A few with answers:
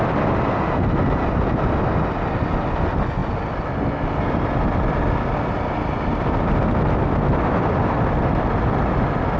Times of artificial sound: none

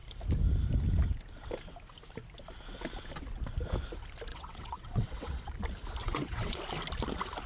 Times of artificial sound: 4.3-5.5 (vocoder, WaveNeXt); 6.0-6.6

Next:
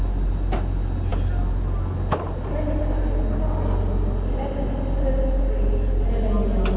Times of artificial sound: none